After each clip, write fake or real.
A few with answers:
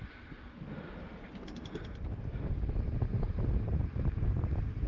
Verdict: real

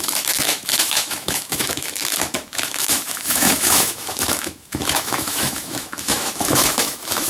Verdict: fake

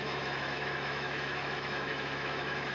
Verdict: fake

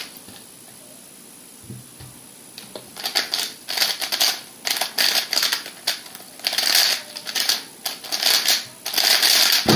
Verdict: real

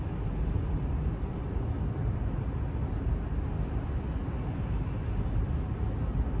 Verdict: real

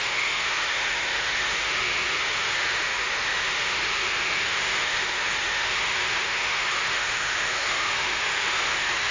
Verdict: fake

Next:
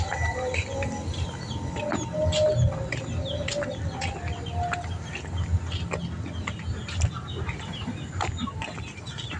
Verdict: real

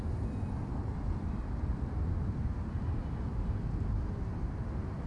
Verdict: real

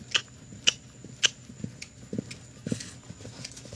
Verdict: real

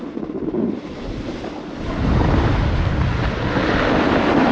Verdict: real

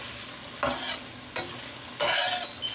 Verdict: real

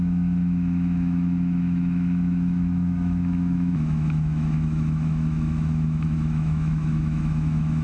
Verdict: fake